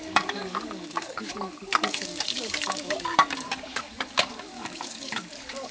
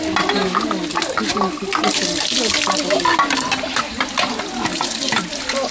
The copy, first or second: first